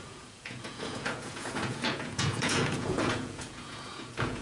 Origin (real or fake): fake